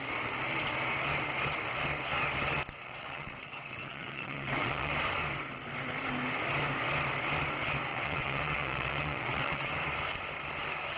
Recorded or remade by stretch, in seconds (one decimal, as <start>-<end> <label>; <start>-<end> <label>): 0.0-2.8 recorded; 2.8-4.9 remade; 4.9-7.9 recorded; 7.9-9.7 remade; 9.7-11.0 recorded